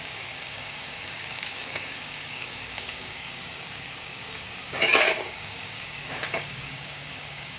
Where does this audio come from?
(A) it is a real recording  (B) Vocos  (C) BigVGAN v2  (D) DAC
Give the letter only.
D